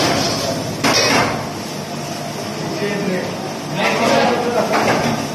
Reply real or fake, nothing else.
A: real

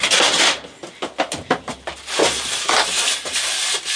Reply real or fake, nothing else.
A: real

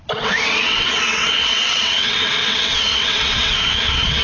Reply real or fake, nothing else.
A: fake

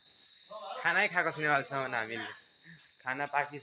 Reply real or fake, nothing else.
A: real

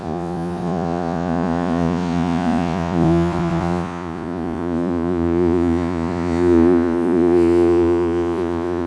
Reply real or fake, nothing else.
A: fake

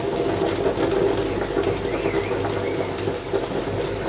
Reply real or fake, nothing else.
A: real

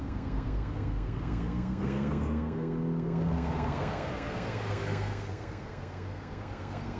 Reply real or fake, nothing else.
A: fake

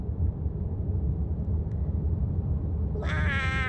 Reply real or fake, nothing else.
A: real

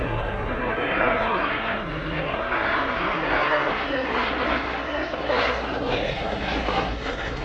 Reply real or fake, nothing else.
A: fake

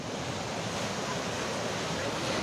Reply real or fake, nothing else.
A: real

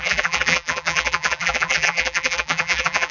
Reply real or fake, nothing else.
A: fake